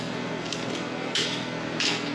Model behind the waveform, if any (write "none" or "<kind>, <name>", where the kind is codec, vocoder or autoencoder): codec, SNAC